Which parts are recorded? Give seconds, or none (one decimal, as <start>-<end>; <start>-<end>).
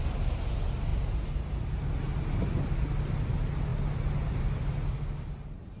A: 0.0-5.8